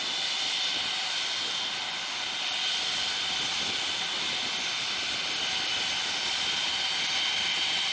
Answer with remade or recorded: recorded